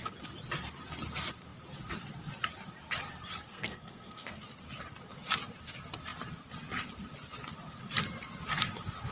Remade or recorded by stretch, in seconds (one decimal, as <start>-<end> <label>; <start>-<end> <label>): 0.0-3.5 recorded; 3.5-4.4 remade; 4.4-9.1 recorded